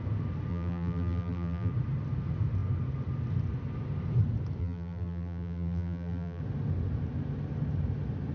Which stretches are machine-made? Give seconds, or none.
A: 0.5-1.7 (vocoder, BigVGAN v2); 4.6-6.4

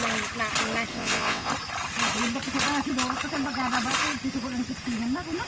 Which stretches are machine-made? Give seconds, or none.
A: 0.9-1.5 (vocoder, WaveNeXt)

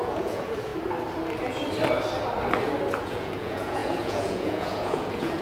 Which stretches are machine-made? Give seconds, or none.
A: 0.0-0.7 (vocoder, Vocos); 3.0-5.4